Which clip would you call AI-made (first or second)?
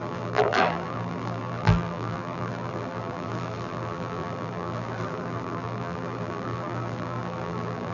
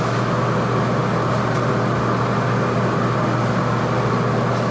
first